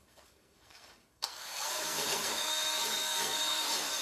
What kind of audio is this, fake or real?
fake